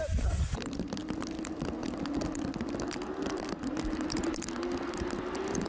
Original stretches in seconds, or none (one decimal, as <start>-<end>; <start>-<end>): 0.0-5.7